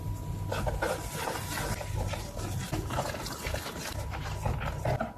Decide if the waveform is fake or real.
real